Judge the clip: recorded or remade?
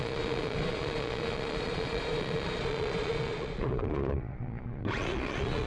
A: remade